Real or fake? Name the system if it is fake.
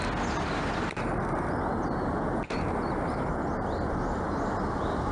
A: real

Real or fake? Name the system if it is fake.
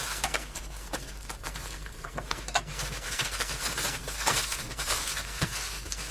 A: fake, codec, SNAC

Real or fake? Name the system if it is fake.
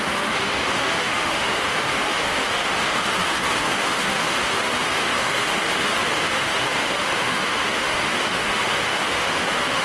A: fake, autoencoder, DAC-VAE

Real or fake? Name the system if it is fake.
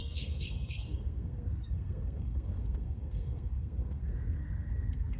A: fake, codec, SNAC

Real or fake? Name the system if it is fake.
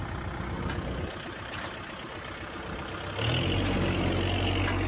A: real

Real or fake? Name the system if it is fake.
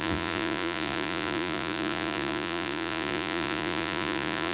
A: fake, vocoder, Vocos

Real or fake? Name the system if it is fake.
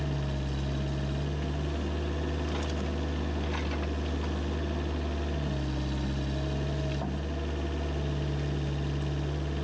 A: real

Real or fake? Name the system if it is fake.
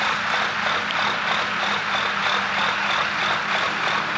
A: real